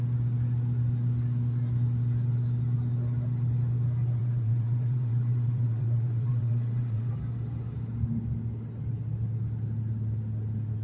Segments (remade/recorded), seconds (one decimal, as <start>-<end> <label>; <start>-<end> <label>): 0.0-4.2 recorded; 4.2-7.1 remade; 7.1-10.8 recorded